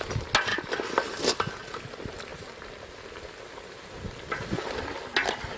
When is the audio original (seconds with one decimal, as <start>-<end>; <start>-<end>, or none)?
0.0-5.6